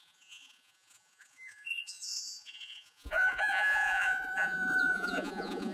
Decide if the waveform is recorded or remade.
remade